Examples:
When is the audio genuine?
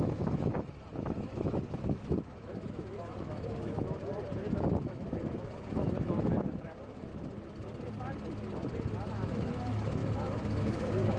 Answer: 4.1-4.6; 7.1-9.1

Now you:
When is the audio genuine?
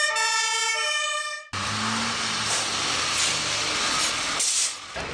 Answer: 0.0-5.1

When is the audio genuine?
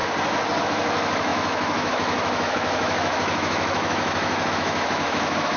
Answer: 0.0-0.6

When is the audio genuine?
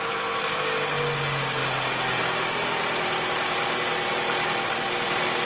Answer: 0.0-5.5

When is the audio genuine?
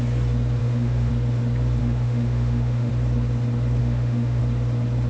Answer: 0.0-0.6; 1.1-1.8; 2.9-3.8; 4.4-5.1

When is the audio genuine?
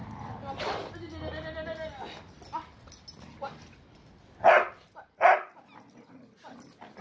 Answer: 0.0-7.0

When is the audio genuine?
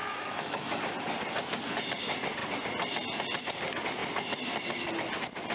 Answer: 0.8-5.5